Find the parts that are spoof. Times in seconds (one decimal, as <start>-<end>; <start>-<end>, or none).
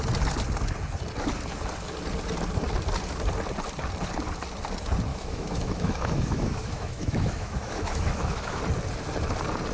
5.1-8.6